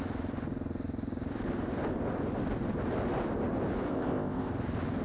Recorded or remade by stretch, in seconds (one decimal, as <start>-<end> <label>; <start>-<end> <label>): 0.0-3.9 recorded; 3.9-4.5 remade; 4.5-5.0 recorded